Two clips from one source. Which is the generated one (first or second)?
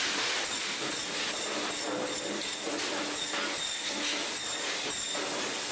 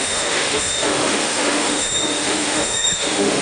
second